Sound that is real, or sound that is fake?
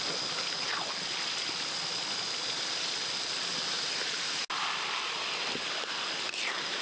real